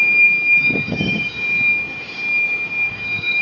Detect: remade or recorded remade